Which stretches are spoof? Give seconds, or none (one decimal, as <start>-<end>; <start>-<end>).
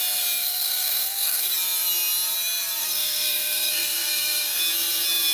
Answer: 0.4-1.5; 2.8-4.6